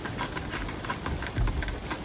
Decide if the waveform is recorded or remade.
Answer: recorded